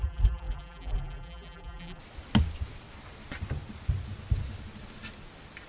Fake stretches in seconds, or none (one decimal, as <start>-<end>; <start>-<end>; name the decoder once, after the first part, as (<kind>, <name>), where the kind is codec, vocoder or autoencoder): 0.0-2.0 (vocoder, BigVGAN v2)